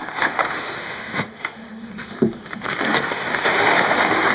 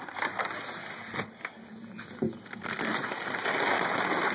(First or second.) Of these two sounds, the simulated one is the first